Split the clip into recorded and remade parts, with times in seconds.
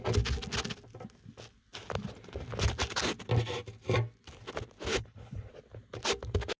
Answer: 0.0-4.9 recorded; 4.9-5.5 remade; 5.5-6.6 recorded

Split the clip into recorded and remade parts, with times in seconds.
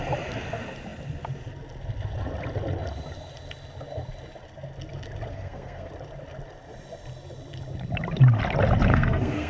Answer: 0.0-5.3 recorded; 5.3-5.9 remade; 5.9-8.9 recorded; 8.9-9.5 remade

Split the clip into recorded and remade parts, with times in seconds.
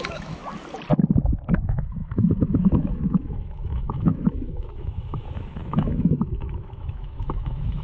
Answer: 0.0-0.4 remade; 0.4-1.5 recorded; 1.5-7.8 remade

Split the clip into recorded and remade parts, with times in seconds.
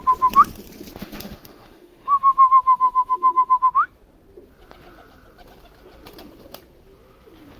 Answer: 0.0-1.0 recorded; 1.0-3.6 remade; 3.6-7.6 recorded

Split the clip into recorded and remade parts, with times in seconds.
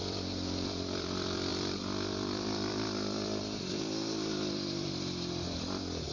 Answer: 0.0-6.1 remade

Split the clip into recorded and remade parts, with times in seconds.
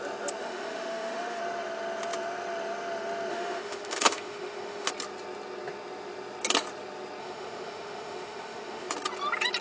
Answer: 0.0-0.4 recorded; 0.4-1.4 remade; 1.4-3.3 recorded; 3.3-4.9 remade; 4.9-7.2 recorded; 7.2-8.9 remade; 8.9-9.6 recorded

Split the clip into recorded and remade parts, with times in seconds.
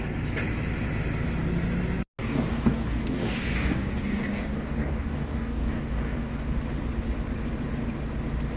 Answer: 0.0-2.2 recorded; 2.2-6.6 remade; 6.6-8.6 recorded